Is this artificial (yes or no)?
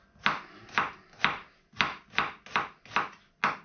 no